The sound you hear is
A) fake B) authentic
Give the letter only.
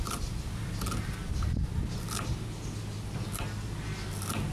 B